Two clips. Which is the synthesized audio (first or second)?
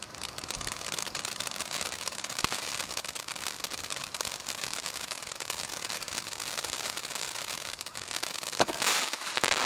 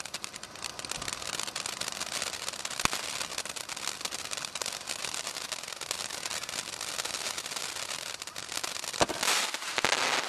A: first